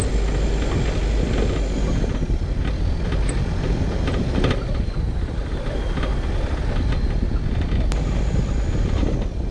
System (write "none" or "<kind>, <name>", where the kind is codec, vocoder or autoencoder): none